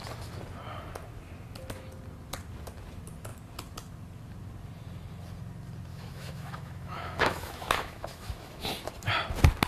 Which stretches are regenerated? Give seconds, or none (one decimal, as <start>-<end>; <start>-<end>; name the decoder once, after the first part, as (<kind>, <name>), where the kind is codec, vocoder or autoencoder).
5.9-8.7 (autoencoder, DAC-VAE)

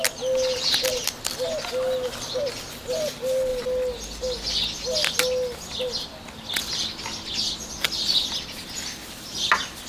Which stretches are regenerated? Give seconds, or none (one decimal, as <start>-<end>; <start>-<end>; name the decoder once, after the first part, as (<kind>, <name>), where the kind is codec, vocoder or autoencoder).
none